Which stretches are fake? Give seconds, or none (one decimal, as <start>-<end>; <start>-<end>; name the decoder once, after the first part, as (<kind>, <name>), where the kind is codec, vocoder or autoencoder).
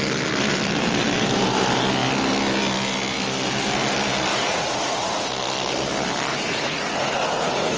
4.3-5.3 (vocoder, Vocos); 6.3-7.8